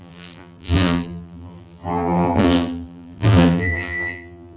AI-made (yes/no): yes